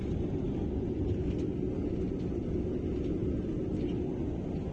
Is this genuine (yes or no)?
yes